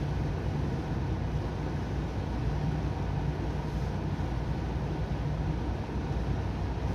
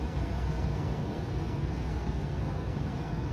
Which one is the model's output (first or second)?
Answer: second